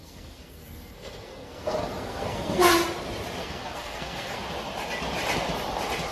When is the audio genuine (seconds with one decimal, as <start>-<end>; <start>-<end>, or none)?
2.7-3.4; 4.4-6.1